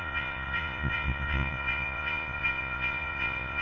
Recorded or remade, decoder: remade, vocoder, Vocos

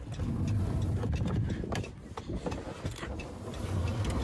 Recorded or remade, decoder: recorded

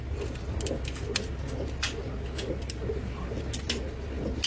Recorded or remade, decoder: recorded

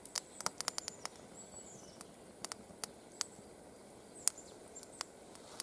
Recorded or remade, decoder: recorded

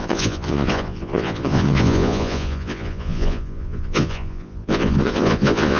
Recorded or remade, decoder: remade, vocoder, Vocos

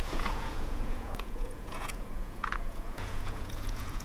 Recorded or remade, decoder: remade, vocoder, Vocos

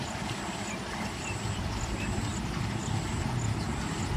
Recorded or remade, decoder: recorded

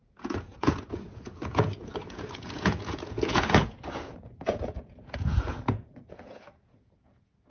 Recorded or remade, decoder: remade, vocoder, Vocos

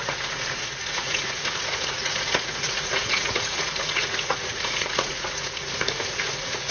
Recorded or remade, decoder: remade, vocoder, Vocos